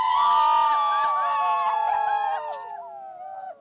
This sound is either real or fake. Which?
real